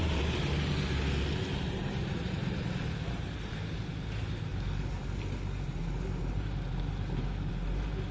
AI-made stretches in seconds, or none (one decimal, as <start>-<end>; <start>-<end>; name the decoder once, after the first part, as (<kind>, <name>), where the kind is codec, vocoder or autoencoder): 0.0-0.7 (vocoder, BigVGAN v2); 1.8-3.5